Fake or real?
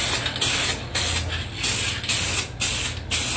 real